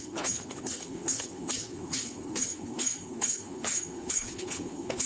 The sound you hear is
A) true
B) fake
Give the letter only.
B